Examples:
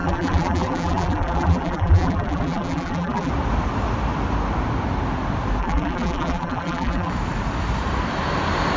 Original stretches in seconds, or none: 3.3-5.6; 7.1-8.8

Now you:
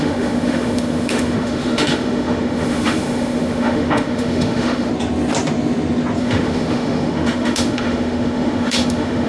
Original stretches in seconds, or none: 4.9-6.2

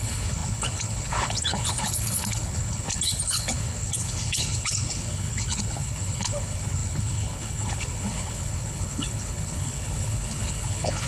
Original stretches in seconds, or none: none